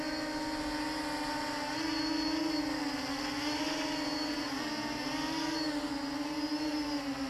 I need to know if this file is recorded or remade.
recorded